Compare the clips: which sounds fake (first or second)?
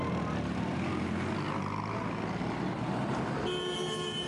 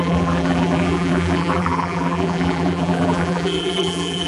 second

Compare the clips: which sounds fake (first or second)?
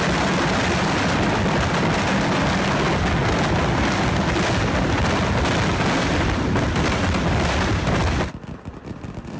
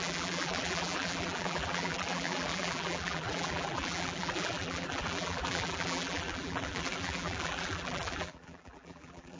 second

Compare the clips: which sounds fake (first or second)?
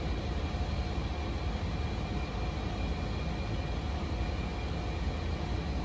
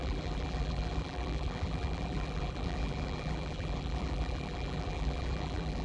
second